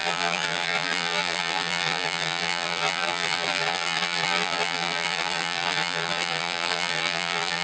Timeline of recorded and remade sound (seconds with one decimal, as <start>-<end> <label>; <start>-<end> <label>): 0.0-7.6 remade